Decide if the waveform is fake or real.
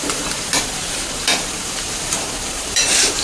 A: fake